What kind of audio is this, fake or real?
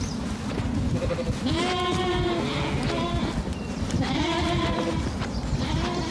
real